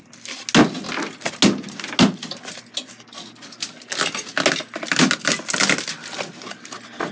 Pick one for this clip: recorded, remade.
recorded